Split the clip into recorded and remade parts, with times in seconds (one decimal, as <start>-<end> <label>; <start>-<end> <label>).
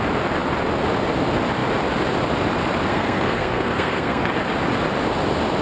0.0-2.9 recorded; 2.9-4.3 remade; 4.3-5.6 recorded